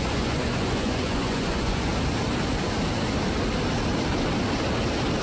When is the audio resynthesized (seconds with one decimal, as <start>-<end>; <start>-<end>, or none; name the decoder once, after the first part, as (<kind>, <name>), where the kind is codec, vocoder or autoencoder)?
0.0-1.9 (vocoder, Vocos)